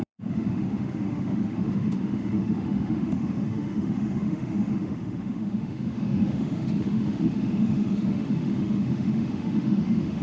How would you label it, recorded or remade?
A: remade